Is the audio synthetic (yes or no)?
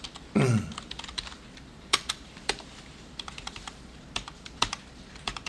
yes